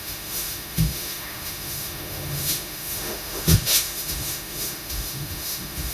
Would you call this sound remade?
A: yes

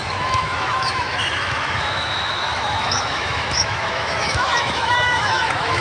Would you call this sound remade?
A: yes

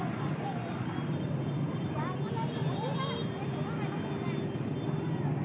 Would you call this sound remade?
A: no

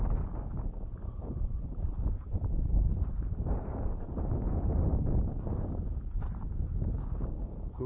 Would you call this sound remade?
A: yes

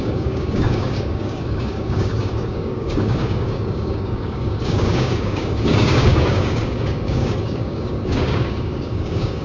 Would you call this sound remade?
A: yes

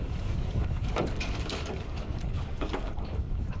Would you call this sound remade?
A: yes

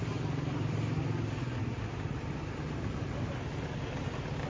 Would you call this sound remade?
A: no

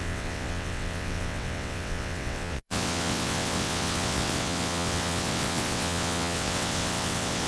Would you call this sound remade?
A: yes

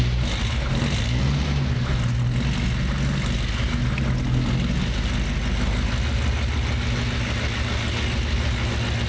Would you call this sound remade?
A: no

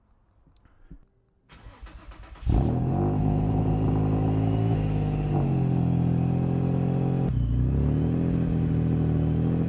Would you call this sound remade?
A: no